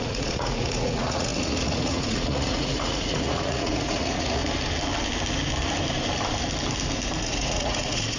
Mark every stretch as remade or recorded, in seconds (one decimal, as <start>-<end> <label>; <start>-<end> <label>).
0.0-4.4 remade; 4.4-7.2 recorded; 7.2-8.2 remade